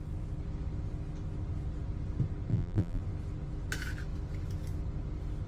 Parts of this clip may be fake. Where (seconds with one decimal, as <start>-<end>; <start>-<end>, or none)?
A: 2.5-3.0